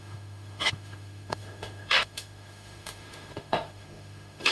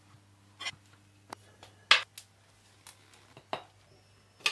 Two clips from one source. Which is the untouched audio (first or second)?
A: second